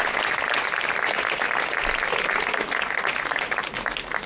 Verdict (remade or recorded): recorded